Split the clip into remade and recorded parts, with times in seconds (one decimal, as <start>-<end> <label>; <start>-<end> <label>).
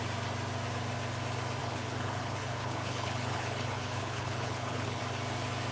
0.0-1.6 recorded; 1.6-5.0 remade; 5.0-5.7 recorded